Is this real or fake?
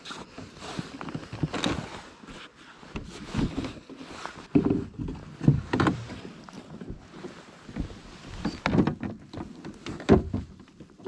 real